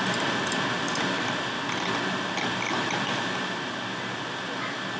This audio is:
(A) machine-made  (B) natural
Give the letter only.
B